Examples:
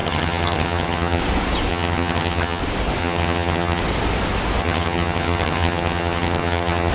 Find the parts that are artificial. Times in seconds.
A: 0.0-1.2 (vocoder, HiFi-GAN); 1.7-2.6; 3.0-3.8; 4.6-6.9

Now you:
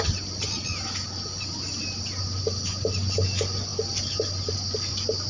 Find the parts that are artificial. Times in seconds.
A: none

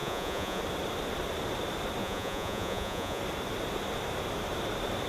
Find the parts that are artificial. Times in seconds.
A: 0.0-0.6 (vocoder, Vocos); 2.0-3.2

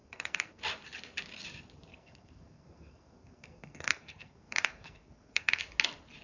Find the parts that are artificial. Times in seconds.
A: 0.0-0.6 (codec, SNAC); 1.9-5.6

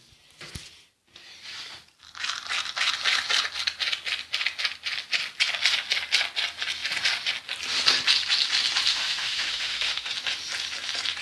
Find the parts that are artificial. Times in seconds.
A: 8.9-10.1 (autoencoder, DAC-VAE)

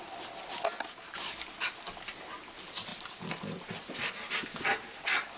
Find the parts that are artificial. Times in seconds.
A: none

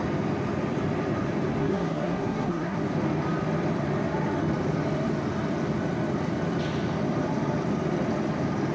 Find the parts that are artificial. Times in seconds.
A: 1.6-2.8 (codec, SNAC)

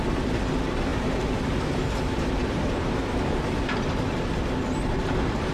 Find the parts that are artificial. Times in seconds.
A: 0.9-4.2 (vocoder, BigVGAN v2)